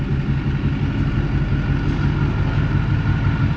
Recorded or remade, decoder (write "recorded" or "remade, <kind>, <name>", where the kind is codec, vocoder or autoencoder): recorded